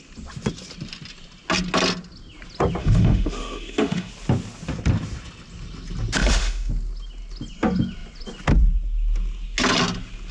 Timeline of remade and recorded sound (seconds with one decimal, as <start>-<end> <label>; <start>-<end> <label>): 0.0-2.8 recorded; 2.8-4.1 remade; 4.1-6.2 recorded; 6.2-6.7 remade; 6.7-10.3 recorded